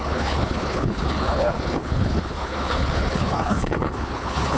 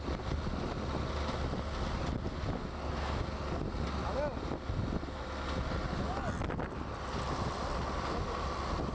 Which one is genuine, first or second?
second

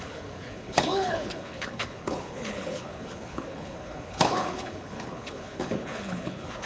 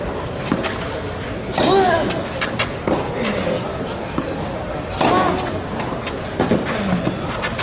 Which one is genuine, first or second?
second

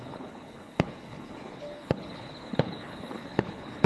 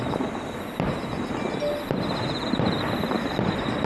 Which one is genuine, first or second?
second